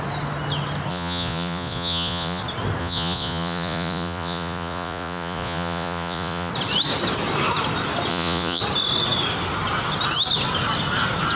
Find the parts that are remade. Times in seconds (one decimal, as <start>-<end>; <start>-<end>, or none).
0.9-2.4; 2.8-6.5; 8.1-8.6